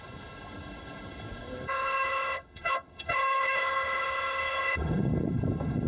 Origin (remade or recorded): remade